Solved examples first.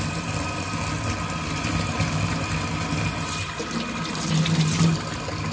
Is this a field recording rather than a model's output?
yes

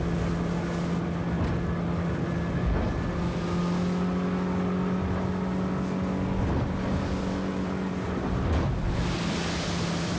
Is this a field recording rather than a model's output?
yes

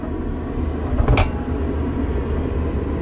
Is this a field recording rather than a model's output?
yes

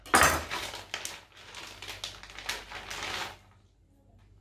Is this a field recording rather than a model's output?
yes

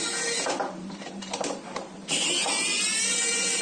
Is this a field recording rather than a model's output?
no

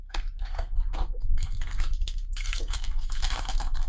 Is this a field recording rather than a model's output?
no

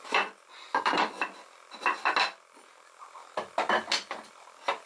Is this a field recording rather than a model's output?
yes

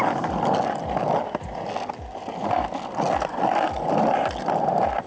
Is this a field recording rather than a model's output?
yes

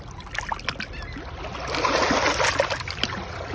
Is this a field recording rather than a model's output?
yes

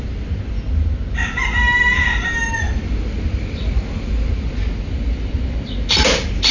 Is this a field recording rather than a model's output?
yes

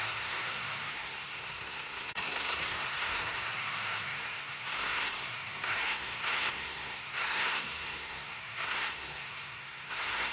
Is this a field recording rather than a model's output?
no